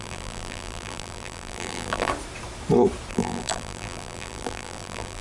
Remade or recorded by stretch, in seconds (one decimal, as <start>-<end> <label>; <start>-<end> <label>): 0.0-2.1 remade; 2.1-3.1 recorded; 3.1-5.2 remade